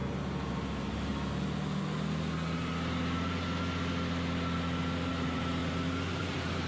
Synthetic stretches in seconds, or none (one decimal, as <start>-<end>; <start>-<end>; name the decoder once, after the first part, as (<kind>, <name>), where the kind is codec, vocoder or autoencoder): 0.5-1.1 (vocoder, BigVGAN v2); 5.1-5.6; 6.2-6.7